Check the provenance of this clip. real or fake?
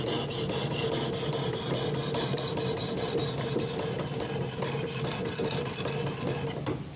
real